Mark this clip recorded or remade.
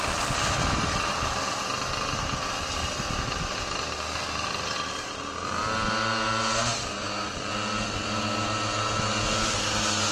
recorded